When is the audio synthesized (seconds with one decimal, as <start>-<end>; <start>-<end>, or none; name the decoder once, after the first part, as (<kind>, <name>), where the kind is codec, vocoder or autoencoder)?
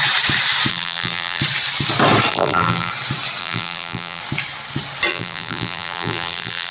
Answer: 0.7-1.4 (vocoder, BigVGAN v2); 2.3-2.9; 3.4-4.2; 5.1-6.7